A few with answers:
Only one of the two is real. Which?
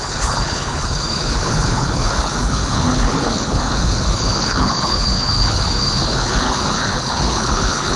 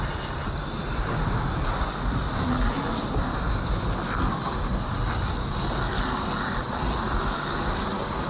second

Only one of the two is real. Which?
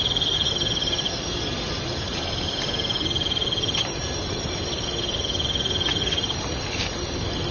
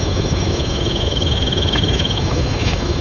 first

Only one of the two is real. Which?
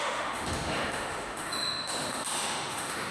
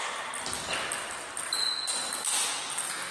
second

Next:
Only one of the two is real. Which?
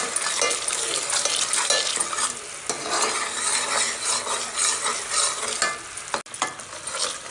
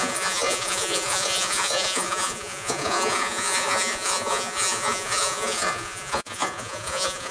first